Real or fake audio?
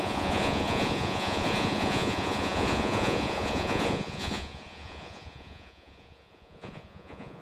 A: fake